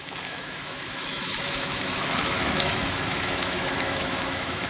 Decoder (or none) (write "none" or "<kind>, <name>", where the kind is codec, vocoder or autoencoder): autoencoder, DAC-VAE